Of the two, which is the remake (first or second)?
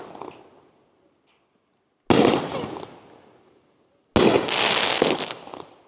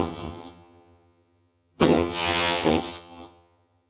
second